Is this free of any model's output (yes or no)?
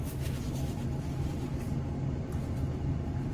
yes